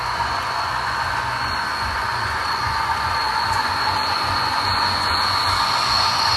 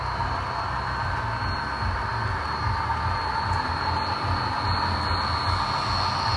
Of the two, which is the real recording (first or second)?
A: second